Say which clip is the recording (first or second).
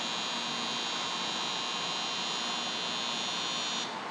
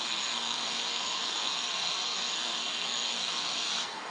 first